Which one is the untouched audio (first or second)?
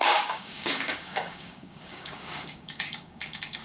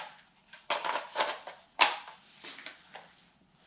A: second